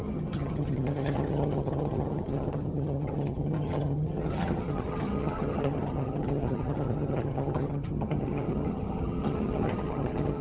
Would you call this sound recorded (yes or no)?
no